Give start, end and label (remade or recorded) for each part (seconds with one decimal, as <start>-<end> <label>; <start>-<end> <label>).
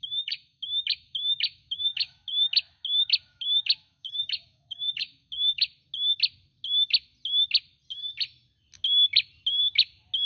0.0-5.7 remade; 5.7-10.3 recorded